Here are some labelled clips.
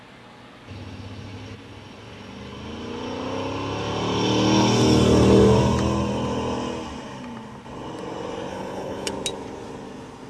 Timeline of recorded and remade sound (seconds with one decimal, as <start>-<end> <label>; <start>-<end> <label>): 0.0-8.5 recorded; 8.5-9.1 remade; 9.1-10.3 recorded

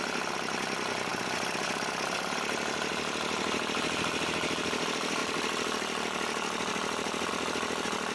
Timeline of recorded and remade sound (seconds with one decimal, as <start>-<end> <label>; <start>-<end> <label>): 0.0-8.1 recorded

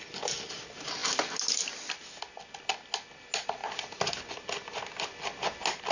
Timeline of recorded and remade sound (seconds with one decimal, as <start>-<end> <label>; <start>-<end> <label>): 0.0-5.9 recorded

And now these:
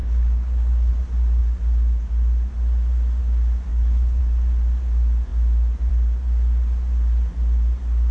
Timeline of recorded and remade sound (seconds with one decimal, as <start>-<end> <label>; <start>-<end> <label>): 0.0-0.9 remade; 0.9-3.7 recorded; 3.7-4.2 remade; 4.2-8.1 recorded